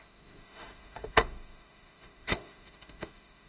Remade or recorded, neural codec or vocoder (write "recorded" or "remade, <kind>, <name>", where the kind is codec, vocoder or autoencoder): remade, autoencoder, DAC-VAE